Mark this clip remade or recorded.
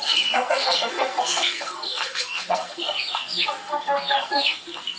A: remade